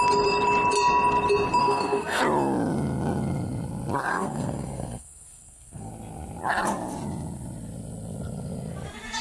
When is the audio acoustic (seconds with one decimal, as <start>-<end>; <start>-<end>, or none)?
0.0-1.6; 2.2-4.1; 5.9-9.2